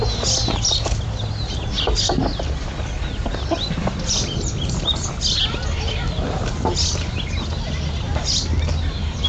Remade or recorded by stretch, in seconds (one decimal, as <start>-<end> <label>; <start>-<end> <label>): 0.0-9.3 recorded